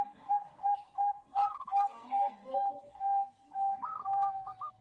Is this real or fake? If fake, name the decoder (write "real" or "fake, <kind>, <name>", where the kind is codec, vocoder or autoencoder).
fake, codec, SNAC